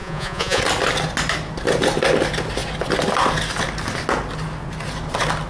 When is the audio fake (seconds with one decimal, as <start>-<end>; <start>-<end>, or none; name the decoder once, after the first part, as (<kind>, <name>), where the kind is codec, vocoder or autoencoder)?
0.0-0.6 (vocoder, Vocos)